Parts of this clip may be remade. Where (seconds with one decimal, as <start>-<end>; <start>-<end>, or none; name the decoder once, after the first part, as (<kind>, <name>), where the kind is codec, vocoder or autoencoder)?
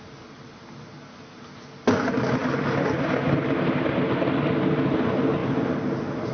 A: none